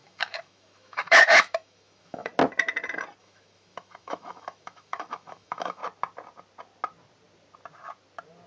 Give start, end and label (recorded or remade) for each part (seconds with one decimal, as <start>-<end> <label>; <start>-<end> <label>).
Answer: 0.0-2.3 remade; 2.3-3.2 recorded; 3.2-5.8 remade; 5.8-8.5 recorded